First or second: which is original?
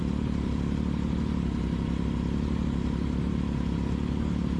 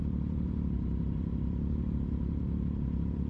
first